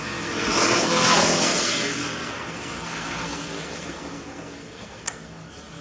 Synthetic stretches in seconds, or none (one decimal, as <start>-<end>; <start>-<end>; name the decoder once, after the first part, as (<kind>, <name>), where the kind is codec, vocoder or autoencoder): 0.0-5.8 (codec, SNAC)